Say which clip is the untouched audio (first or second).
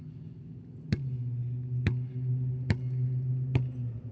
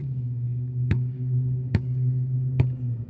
first